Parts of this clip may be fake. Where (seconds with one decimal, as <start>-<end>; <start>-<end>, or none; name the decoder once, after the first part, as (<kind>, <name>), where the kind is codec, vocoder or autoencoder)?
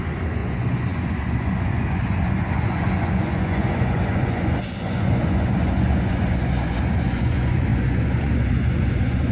0.0-9.3 (vocoder, Vocos)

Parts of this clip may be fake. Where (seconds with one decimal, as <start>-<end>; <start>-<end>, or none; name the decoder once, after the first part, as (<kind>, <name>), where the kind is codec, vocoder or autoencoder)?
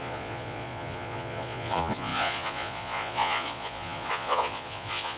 0.0-5.2 (vocoder, Vocos)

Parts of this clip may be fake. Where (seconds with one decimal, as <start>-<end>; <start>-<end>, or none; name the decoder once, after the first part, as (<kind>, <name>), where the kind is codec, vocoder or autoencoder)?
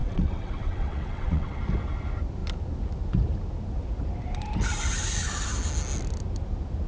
0.0-1.6 (vocoder, WaveNeXt)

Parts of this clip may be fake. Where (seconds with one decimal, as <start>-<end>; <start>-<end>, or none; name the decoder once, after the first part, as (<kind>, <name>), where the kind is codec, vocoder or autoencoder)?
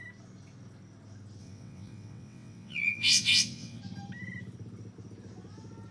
1.4-3.8 (vocoder, WaveNeXt)